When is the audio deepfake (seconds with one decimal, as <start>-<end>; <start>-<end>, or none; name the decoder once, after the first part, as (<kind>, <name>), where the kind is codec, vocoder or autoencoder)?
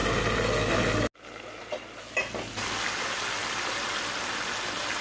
none